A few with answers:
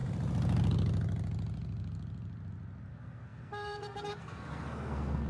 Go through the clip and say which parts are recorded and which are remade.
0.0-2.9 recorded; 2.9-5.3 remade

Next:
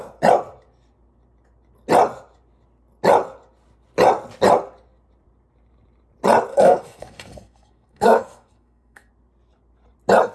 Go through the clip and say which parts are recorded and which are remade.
0.0-6.5 recorded; 6.5-9.1 remade; 9.1-10.3 recorded

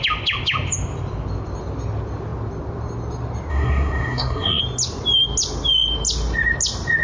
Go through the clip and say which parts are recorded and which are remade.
0.0-3.5 recorded; 3.5-4.6 remade; 4.6-7.0 recorded

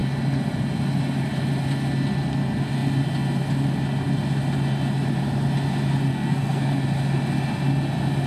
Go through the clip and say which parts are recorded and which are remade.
0.0-6.1 recorded; 6.1-6.7 remade; 6.7-8.3 recorded

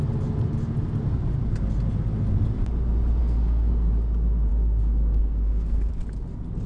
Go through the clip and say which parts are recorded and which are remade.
0.0-3.2 recorded; 3.2-3.9 remade; 3.9-4.5 recorded; 4.5-5.9 remade; 5.9-6.7 recorded

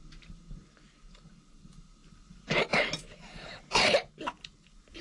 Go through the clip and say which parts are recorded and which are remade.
0.0-5.0 recorded